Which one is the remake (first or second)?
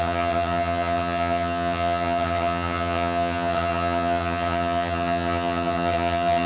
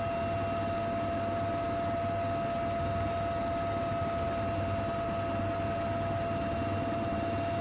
first